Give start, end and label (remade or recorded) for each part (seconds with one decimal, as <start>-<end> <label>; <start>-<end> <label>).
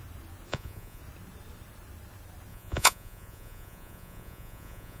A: 0.0-0.5 recorded; 0.5-1.0 remade; 1.0-2.5 recorded; 2.5-5.0 remade